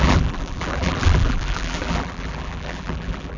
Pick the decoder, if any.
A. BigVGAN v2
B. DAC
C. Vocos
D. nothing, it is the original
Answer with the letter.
A